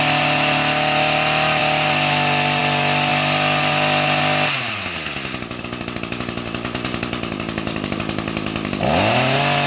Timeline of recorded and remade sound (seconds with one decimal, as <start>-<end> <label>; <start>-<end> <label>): 0.0-9.7 recorded